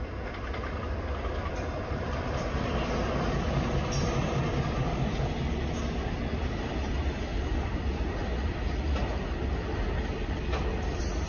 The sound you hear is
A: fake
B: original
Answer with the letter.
B